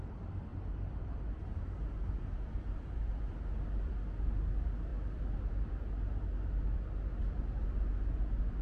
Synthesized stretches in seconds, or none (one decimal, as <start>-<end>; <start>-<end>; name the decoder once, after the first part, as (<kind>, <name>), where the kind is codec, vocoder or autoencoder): 0.5-3.2 (vocoder, BigVGAN v2)